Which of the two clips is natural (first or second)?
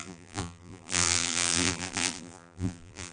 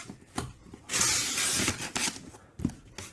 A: second